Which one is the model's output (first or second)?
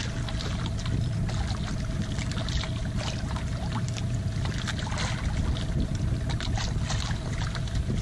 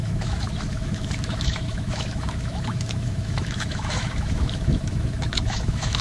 second